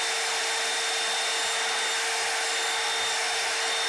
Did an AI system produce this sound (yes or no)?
no